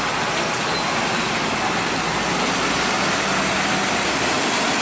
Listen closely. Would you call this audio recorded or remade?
recorded